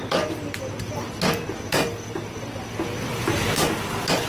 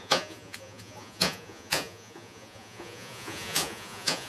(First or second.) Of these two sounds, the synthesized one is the second